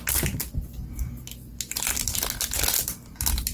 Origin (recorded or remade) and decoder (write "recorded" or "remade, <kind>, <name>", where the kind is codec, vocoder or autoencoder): recorded